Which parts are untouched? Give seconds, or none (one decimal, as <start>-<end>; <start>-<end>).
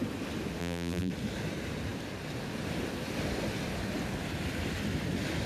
0.0-0.6; 1.1-5.5